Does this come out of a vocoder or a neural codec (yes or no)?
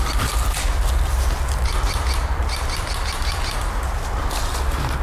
no